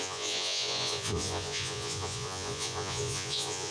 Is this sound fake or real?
fake